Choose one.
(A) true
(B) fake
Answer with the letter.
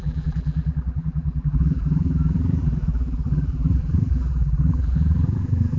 B